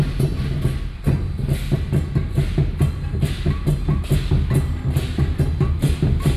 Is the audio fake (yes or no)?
no